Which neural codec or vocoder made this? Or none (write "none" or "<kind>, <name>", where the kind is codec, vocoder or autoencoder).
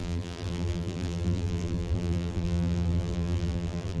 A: vocoder, BigVGAN v2